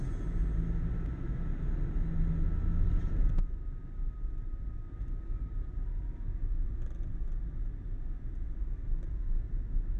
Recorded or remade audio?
recorded